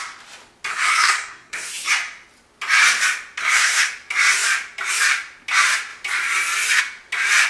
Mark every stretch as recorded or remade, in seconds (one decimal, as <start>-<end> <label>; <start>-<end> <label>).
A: 0.0-0.7 recorded; 0.7-1.7 remade; 1.7-3.4 recorded; 3.4-3.9 remade; 3.9-7.5 recorded